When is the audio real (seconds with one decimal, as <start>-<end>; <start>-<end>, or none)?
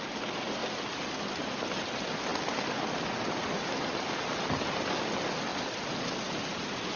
0.0-7.0